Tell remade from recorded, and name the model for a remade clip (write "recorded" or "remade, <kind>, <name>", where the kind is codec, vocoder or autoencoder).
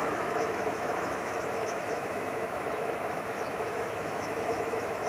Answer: remade, autoencoder, DAC-VAE